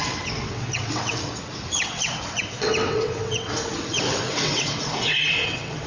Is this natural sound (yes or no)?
no